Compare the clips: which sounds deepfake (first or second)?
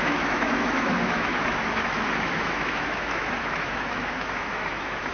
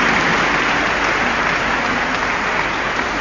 first